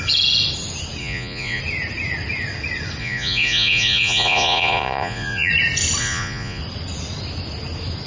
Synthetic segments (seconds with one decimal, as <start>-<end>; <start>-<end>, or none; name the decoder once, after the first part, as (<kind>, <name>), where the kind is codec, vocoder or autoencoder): 1.0-1.6 (vocoder, Vocos); 3.0-5.5; 6.0-6.6